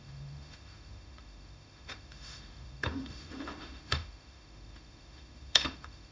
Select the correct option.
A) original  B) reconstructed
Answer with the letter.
B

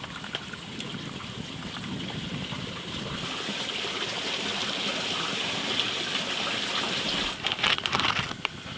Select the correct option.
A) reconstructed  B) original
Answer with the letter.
B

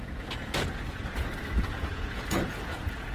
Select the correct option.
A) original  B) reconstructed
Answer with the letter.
B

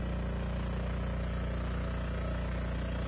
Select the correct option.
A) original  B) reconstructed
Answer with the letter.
A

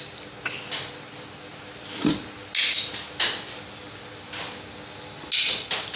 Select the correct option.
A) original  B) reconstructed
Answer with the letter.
A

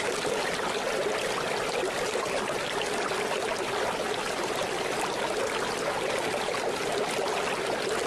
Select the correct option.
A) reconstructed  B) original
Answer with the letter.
B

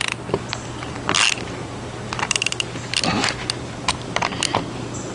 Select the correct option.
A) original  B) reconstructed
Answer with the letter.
A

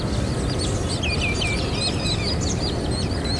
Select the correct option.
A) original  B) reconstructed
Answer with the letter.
A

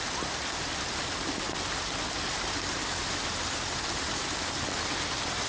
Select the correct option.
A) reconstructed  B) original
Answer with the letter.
B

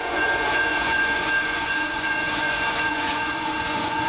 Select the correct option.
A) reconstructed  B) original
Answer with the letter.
A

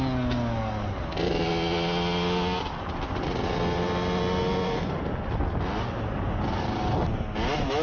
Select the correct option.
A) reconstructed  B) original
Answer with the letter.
B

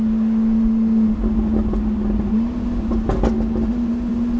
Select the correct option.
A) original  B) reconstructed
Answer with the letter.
A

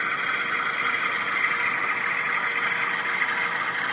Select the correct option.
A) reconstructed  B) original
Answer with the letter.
B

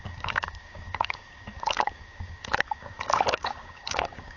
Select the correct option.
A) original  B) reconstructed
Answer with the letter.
B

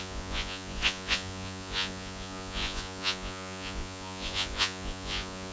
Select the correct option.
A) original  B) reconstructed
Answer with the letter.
B